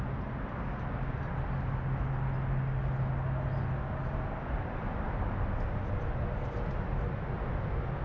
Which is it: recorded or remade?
recorded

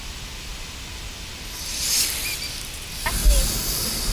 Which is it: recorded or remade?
recorded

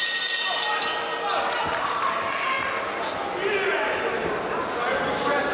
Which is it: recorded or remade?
recorded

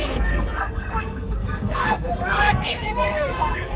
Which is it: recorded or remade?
remade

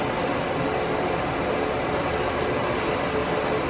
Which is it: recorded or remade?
recorded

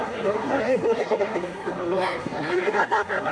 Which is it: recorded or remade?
remade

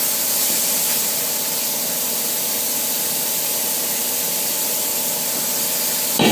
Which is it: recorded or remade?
remade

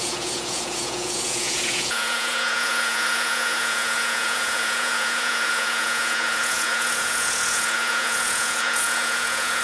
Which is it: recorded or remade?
remade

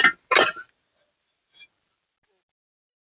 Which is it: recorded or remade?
recorded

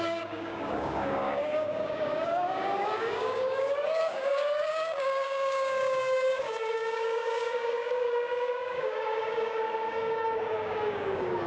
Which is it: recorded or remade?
remade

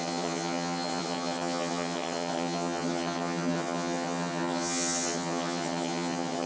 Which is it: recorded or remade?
remade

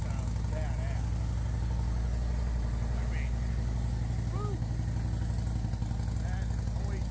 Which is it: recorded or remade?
recorded